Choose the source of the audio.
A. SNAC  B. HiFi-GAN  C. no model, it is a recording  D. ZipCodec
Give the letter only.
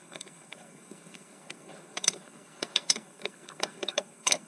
A